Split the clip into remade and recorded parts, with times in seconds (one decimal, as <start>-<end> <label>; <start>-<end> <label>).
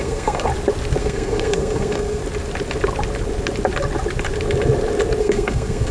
0.0-0.5 remade; 0.5-1.0 recorded; 1.0-2.2 remade; 2.2-5.2 recorded; 5.2-5.9 remade